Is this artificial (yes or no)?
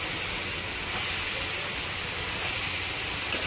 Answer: no